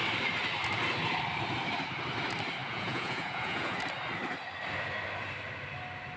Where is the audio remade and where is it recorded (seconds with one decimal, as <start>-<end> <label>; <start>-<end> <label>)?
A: 0.0-2.6 recorded; 2.6-3.8 remade; 3.8-6.2 recorded

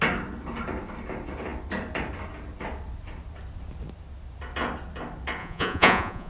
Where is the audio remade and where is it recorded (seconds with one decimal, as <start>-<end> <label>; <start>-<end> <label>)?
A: 0.0-5.4 recorded; 5.4-6.3 remade

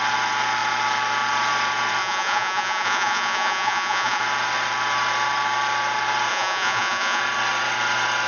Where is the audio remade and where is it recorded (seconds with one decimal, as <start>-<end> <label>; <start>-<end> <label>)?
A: 0.0-2.0 recorded; 2.0-4.2 remade; 4.2-6.3 recorded; 6.3-7.2 remade; 7.2-8.3 recorded

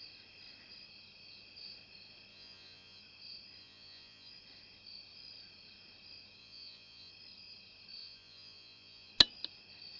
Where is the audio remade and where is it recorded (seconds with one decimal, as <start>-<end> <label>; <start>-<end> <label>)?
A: 0.0-2.3 recorded; 2.3-3.0 remade; 3.0-3.6 recorded; 3.6-4.3 remade; 4.3-6.4 recorded; 6.4-7.1 remade; 7.1-8.0 recorded; 8.0-9.1 remade; 9.1-10.0 recorded